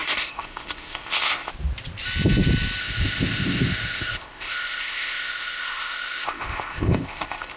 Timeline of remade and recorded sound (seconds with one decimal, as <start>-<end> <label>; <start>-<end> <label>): 0.0-1.5 remade; 1.5-2.8 recorded; 2.8-7.6 remade